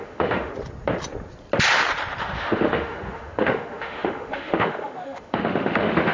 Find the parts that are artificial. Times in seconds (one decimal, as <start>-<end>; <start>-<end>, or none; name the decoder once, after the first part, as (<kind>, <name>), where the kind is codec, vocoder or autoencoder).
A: 0.0-0.5 (autoencoder, DAC-VAE); 2.4-6.1